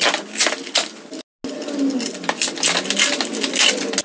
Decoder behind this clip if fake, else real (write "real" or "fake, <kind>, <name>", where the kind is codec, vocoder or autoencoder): real